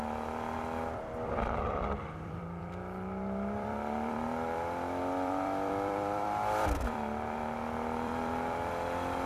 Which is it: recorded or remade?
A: remade